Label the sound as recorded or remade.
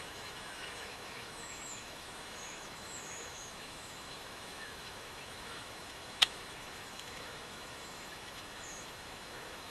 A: remade